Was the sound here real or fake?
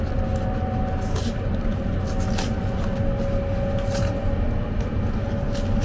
real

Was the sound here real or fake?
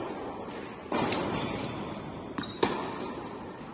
fake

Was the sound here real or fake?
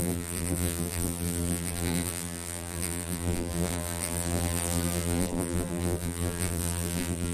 fake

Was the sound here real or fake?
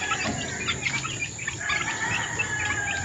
real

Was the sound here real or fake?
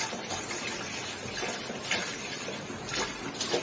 fake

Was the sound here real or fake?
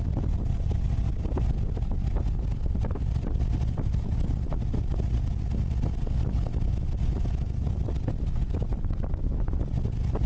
fake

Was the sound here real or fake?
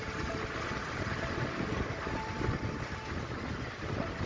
real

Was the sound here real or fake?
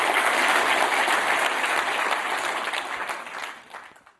real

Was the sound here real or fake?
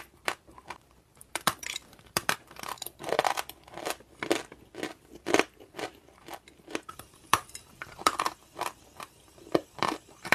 fake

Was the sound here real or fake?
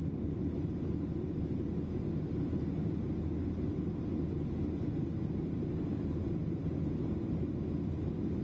real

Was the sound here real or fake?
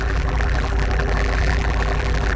fake